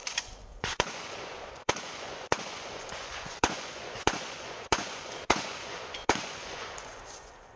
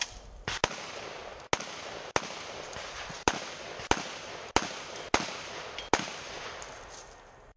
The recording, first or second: second